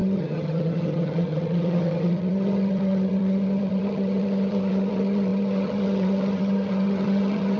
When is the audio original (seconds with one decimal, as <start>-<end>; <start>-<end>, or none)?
none